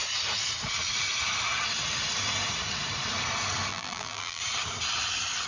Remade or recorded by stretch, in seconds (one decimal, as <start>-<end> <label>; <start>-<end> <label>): 0.0-3.7 recorded; 3.7-4.4 remade; 4.4-5.5 recorded